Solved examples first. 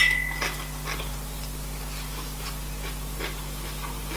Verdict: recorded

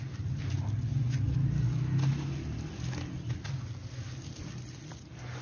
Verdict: recorded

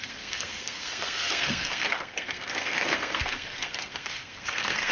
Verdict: remade